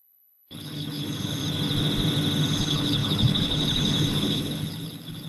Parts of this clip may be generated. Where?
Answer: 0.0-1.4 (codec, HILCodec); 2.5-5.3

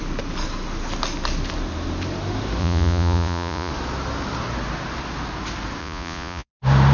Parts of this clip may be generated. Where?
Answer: 2.6-3.7 (vocoder, Vocos); 5.8-6.5

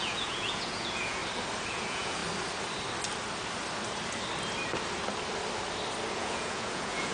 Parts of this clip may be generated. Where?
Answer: 0.0-1.2 (vocoder, Vocos); 1.7-2.2; 6.1-7.1

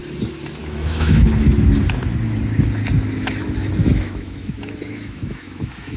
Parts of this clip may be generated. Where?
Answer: 0.6-1.2 (autoencoder, DAC-VAE); 3.8-6.0

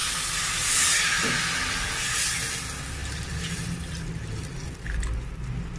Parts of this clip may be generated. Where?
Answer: 0.0-0.7 (vocoder, BigVGAN v2)